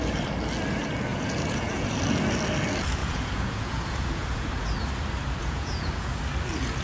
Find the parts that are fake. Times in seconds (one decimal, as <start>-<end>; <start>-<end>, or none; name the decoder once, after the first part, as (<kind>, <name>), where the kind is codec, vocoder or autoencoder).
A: 1.1-2.0 (vocoder, Vocos); 3.0-4.5; 5.4-6.2